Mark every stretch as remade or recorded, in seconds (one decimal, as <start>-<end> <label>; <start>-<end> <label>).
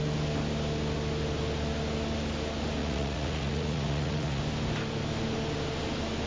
0.0-2.8 recorded; 2.8-4.4 remade; 4.4-6.3 recorded